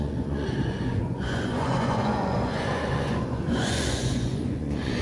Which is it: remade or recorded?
remade